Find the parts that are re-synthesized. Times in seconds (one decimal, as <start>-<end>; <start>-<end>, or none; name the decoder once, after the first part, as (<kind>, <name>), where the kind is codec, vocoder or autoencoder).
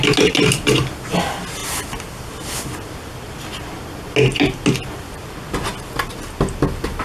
none